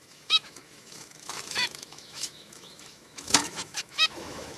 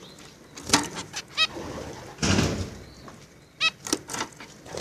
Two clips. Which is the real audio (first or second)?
second